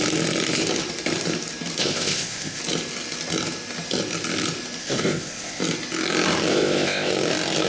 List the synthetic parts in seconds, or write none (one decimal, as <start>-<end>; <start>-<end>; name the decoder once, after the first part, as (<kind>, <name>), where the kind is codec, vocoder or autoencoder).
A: 1.8-2.6 (codec, ZipCodec); 4.8-5.6; 6.5-7.1